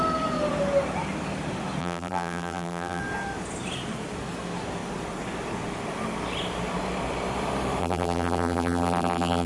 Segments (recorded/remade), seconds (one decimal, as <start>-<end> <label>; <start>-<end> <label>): 0.0-1.8 recorded; 1.8-3.0 remade; 3.0-7.8 recorded; 7.8-9.5 remade